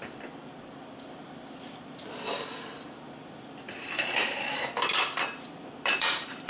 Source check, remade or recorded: remade